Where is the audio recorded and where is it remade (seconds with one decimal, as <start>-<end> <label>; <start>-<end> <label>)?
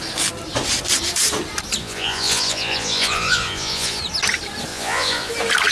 0.0-1.8 recorded; 1.8-4.0 remade; 4.0-4.7 recorded; 4.7-5.3 remade; 5.3-5.7 recorded